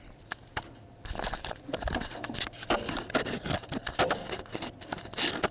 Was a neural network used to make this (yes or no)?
no